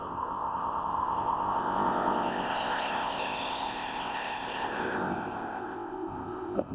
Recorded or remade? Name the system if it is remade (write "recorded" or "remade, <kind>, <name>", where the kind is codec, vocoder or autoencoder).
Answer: remade, codec, ZipCodec